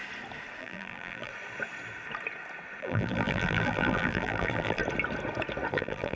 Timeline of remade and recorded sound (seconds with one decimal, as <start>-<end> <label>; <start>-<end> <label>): 0.0-0.6 recorded; 0.6-1.3 remade; 1.3-2.8 recorded; 2.8-4.8 remade; 4.8-5.7 recorded; 5.7-6.2 remade